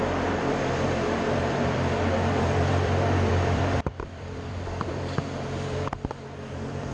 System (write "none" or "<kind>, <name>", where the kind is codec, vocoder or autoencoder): vocoder, BigVGAN v2